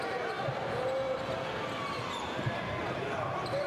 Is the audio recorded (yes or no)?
yes